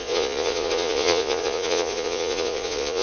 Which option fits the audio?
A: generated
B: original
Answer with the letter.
A